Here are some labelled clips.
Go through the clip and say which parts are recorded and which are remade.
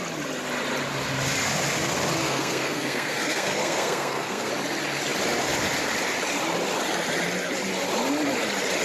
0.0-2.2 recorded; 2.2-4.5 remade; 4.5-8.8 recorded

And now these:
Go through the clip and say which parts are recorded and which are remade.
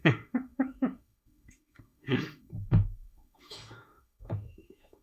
0.0-5.0 remade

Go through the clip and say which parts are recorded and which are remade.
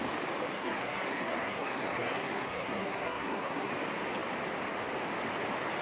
0.0-0.5 recorded; 0.5-3.7 remade; 3.7-5.8 recorded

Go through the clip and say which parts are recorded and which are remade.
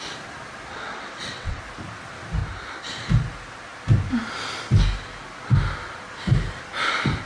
0.0-0.7 recorded; 0.7-1.6 remade; 1.6-7.3 recorded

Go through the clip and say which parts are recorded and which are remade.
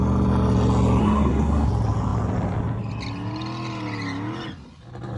0.0-1.0 recorded; 1.0-1.7 remade; 1.7-5.2 recorded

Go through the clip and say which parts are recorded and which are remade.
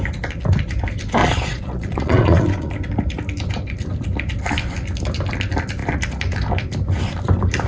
0.0-1.2 recorded; 1.2-2.7 remade; 2.7-7.7 recorded